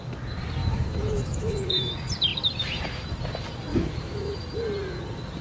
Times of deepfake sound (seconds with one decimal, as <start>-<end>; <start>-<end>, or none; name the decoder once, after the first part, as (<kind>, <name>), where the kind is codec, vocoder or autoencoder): 0.6-1.9 (autoencoder, DAC-VAE); 3.7-4.4